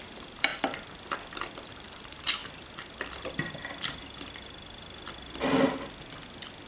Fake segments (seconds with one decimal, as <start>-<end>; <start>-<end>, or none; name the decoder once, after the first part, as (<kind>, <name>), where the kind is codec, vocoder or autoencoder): 0.0-0.5 (vocoder, BigVGAN v2); 1.7-2.4